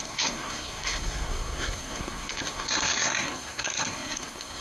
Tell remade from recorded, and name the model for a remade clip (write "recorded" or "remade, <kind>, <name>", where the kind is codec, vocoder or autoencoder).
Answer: remade, codec, SNAC